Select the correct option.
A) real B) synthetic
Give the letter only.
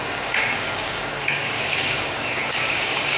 B